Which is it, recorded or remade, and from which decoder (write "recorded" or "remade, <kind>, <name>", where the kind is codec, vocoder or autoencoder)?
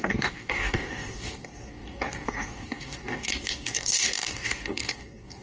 remade, codec, DAC